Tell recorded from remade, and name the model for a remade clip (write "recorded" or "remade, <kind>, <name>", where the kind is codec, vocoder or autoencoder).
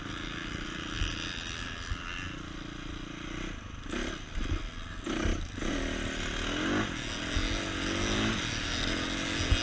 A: recorded